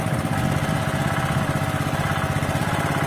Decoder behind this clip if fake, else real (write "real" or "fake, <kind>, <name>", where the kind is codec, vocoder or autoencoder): real